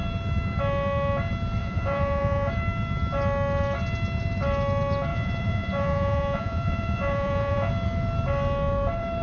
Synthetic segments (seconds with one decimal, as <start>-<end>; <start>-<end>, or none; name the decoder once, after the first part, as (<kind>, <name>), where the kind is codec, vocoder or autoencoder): 1.6-2.5 (vocoder, Vocos); 5.1-7.7